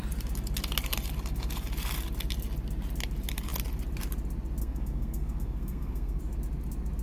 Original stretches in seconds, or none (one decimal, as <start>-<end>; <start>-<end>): 0.0-4.6; 6.2-7.0